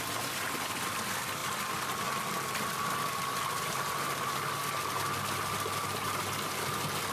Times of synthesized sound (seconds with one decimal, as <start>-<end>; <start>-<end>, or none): none